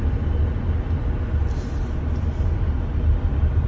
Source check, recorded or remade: recorded